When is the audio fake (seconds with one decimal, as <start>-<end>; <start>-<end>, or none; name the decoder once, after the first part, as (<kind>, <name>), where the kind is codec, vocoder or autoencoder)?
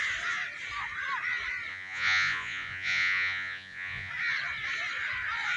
1.7-4.1 (vocoder, Vocos)